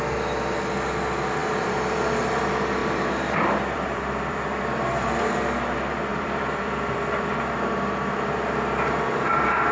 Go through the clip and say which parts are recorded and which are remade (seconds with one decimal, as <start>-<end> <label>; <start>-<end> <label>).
0.0-1.4 recorded; 1.4-2.4 remade; 2.4-2.8 recorded; 2.8-5.2 remade; 5.2-6.1 recorded; 6.1-7.3 remade; 7.3-9.7 recorded